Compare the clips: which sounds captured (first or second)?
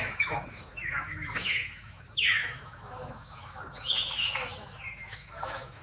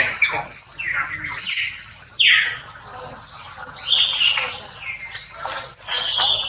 second